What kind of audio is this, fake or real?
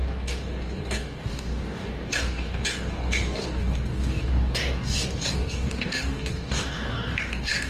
fake